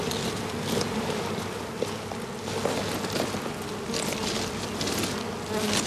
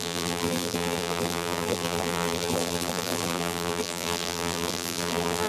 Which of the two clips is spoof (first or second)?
second